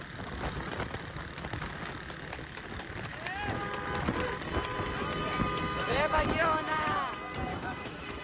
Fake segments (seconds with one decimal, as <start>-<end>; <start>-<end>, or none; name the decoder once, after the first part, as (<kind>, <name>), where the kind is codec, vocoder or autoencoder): 7.5-8.2 (autoencoder, DAC-VAE)